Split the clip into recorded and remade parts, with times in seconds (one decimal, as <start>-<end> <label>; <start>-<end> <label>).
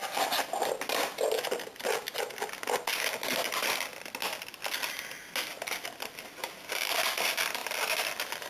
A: 0.0-5.5 recorded; 5.5-6.2 remade; 6.2-7.6 recorded; 7.6-8.5 remade